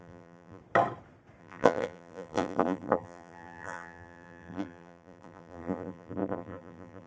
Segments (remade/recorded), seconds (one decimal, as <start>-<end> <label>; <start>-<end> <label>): 0.0-0.6 remade; 0.6-1.4 recorded; 1.4-7.1 remade